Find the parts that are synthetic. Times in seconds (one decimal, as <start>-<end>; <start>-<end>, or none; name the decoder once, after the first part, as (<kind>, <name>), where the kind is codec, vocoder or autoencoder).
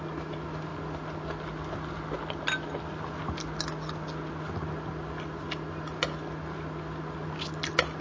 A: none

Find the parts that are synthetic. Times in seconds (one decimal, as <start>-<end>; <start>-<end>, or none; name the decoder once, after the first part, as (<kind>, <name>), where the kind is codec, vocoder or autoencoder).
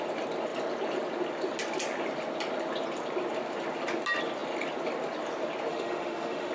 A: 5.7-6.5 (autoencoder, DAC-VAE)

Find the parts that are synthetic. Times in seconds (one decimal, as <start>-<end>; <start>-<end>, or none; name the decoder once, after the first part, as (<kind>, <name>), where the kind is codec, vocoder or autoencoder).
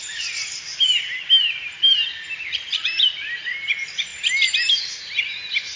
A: 0.0-4.1 (vocoder, BigVGAN v2); 4.7-5.8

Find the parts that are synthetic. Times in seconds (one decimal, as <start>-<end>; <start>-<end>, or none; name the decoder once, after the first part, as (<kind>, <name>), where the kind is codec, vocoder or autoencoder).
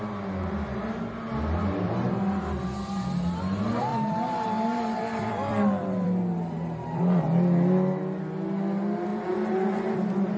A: 3.9-7.2 (vocoder, BigVGAN v2); 9.1-10.4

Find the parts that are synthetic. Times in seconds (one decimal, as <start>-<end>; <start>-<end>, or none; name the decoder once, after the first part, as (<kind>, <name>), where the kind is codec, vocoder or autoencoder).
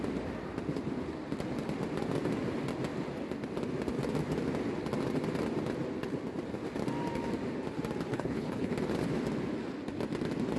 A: 8.1-8.7 (codec, HILCodec)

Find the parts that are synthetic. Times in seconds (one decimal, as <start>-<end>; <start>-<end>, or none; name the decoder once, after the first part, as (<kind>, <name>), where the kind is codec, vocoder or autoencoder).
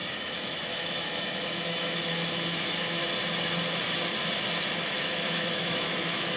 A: 0.0-3.0 (autoencoder, DAC-VAE); 4.7-6.4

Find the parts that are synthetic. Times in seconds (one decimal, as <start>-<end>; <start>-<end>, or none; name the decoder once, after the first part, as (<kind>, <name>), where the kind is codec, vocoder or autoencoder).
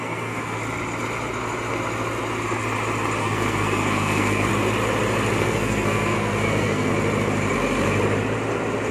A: 0.0-0.6 (codec, SNAC); 3.2-4.5; 5.4-6.9